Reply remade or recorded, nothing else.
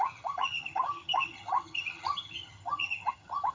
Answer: remade